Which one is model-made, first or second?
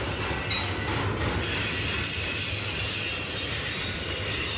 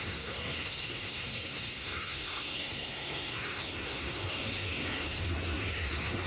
second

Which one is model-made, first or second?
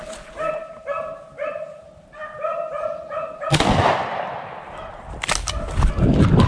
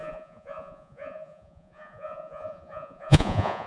second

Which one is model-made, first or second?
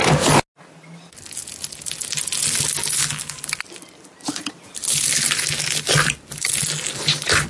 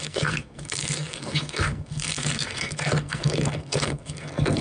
second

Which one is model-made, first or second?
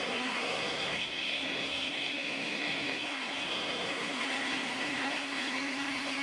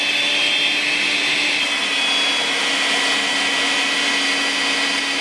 first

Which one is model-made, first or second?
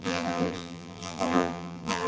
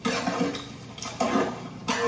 first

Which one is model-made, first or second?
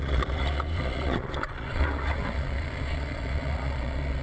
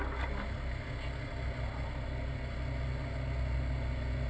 first